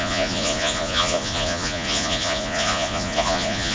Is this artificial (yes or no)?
yes